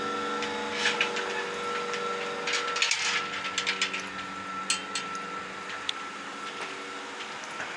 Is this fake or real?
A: real